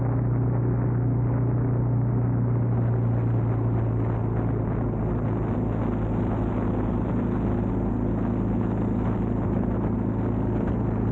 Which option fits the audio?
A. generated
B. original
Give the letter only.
B